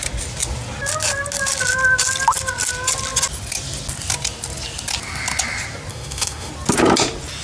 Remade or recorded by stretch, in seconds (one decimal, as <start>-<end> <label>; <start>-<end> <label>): 0.0-5.9 recorded; 5.9-6.5 remade; 6.5-7.4 recorded